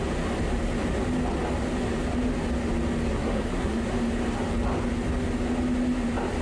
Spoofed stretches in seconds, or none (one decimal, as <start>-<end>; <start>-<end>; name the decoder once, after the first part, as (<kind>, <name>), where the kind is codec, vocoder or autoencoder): 3.1-3.8 (codec, SNAC)